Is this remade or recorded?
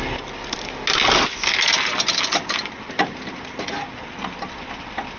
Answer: recorded